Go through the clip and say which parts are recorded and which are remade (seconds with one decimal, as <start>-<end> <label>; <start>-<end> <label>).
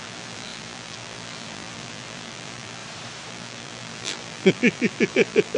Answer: 0.0-2.8 remade; 2.8-3.3 recorded; 3.3-5.6 remade